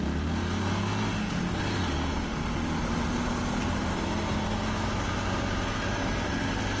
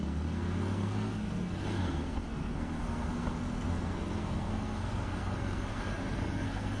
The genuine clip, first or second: first